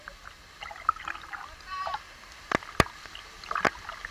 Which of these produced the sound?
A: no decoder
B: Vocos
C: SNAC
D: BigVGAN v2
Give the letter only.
A